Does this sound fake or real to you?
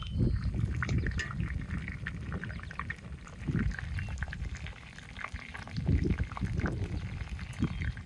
real